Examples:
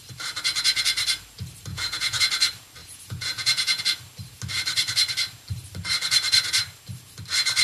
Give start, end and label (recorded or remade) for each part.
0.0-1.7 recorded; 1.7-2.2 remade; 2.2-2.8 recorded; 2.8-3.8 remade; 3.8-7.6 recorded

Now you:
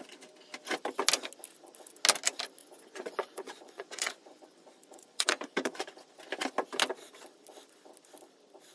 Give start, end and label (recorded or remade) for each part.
0.0-2.6 recorded; 2.6-6.1 remade; 6.1-8.7 recorded

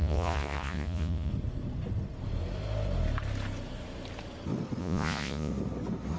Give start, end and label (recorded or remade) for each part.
0.0-1.3 remade; 1.3-4.8 recorded; 4.8-5.5 remade; 5.5-6.2 recorded

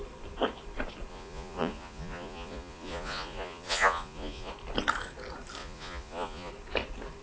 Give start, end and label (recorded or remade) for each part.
0.0-1.1 recorded; 1.1-4.5 remade; 4.5-5.6 recorded; 5.6-6.5 remade; 6.5-7.2 recorded

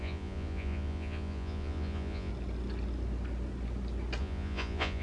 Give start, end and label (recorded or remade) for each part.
0.0-2.3 remade; 2.3-4.2 recorded; 4.2-5.0 remade